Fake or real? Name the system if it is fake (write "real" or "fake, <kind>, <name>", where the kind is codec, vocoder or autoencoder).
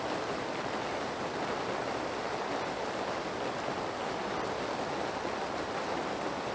fake, vocoder, BigVGAN v2